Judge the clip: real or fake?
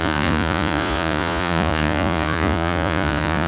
fake